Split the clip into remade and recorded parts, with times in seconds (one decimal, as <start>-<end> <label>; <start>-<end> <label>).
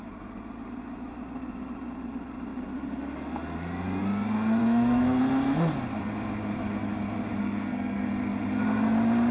0.0-4.6 recorded; 4.6-5.2 remade; 5.2-7.4 recorded; 7.4-8.1 remade; 8.1-9.3 recorded